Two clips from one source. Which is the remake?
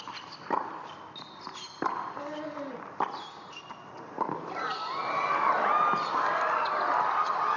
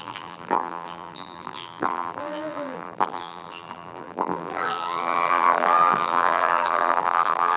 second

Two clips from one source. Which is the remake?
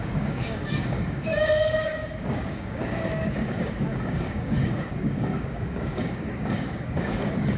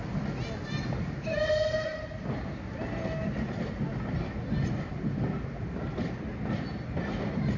first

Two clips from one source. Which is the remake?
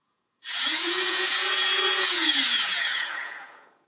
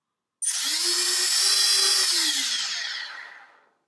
first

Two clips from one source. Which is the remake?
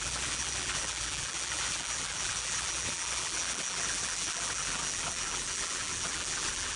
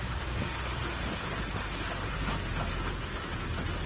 first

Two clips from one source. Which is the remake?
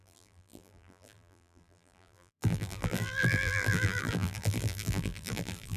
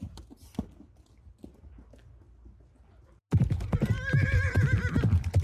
first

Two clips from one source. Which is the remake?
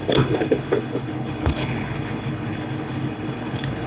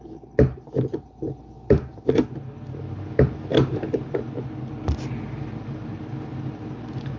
first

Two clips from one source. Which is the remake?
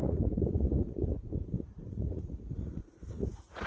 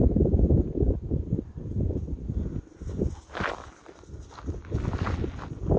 first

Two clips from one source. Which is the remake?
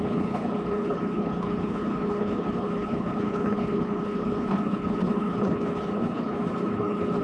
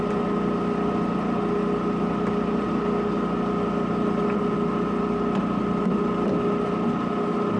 first